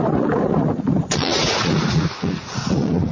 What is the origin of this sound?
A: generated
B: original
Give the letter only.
A